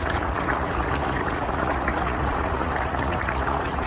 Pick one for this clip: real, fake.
fake